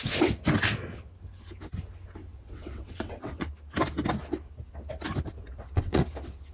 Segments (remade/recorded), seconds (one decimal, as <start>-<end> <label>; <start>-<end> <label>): 0.0-2.3 recorded; 2.3-3.5 remade; 3.5-5.4 recorded; 5.4-6.0 remade; 6.0-6.5 recorded